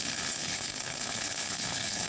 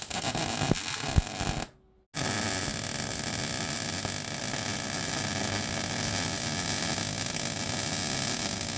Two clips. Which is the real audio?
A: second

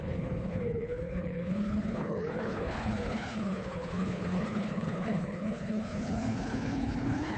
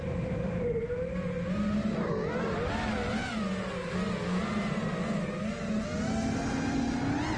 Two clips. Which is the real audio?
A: second